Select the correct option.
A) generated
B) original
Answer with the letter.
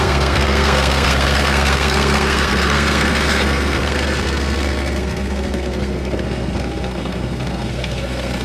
A